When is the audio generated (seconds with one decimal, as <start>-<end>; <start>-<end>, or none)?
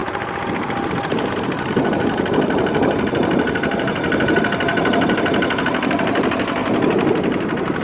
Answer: 1.4-4.7; 5.6-6.6